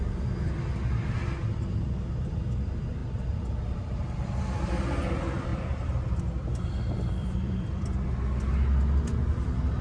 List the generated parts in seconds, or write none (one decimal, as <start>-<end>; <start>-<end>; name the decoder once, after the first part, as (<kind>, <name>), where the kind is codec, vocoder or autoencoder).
3.0-4.4 (vocoder, BigVGAN v2); 7.2-8.1